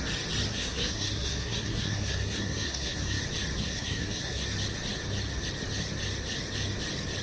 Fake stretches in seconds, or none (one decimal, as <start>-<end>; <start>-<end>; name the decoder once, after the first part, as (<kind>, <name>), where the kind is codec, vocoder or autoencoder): 0.5-3.2 (codec, SNAC); 3.6-4.4